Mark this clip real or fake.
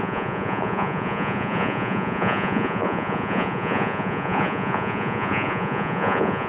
fake